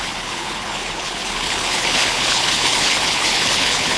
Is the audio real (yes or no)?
no